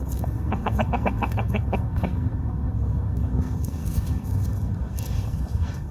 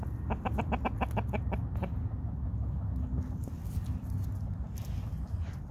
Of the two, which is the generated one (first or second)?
first